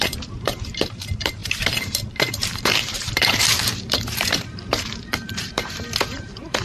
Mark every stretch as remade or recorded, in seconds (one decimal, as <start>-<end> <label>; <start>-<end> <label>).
0.0-6.6 remade